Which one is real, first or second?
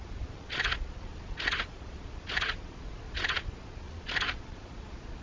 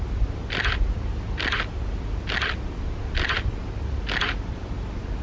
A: second